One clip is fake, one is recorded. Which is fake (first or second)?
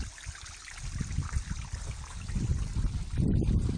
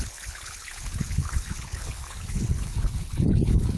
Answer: second